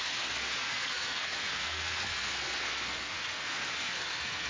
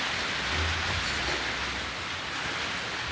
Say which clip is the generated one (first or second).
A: first